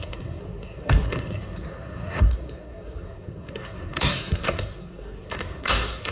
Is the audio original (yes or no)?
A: no